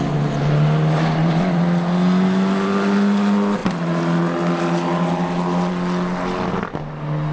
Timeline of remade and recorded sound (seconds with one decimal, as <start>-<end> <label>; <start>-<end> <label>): 0.0-7.3 recorded